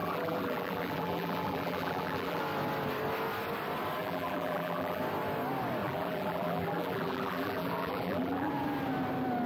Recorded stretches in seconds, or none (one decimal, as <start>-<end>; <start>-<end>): 2.4-4.0; 5.0-5.8; 8.5-9.5